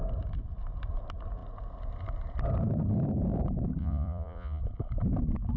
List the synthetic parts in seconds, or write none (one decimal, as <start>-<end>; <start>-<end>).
3.8-4.6